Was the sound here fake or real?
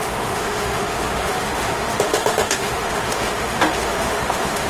fake